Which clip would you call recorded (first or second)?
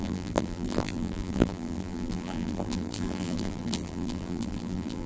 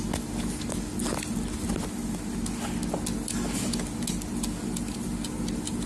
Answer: second